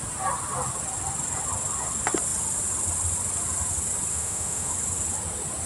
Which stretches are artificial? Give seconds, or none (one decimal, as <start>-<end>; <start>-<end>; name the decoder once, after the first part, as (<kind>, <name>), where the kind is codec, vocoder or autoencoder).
4.1-4.7 (autoencoder, DAC-VAE)